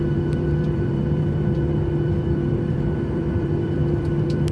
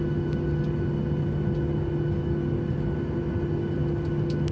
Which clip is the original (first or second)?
second